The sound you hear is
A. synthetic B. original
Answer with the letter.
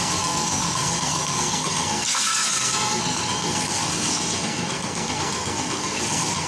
A